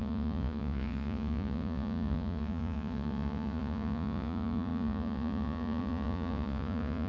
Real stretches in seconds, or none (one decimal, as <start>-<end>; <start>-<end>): none